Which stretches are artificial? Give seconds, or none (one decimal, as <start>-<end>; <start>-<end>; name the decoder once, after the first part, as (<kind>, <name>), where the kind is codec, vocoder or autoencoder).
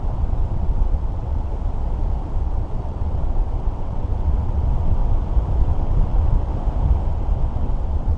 0.0-1.5 (vocoder, WaveNeXt); 2.4-5.0; 5.6-6.5; 7.1-8.2